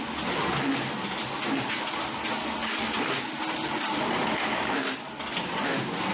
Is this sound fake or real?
real